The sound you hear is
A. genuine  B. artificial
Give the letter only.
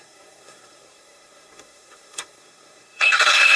B